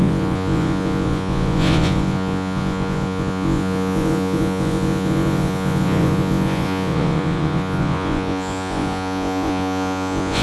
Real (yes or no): no